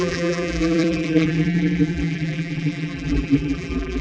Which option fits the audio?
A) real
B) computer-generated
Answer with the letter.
B